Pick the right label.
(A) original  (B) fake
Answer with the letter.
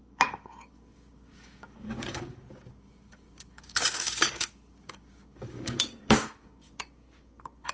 B